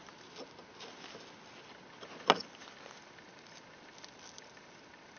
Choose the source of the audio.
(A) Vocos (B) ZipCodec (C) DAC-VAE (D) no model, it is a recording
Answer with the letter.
D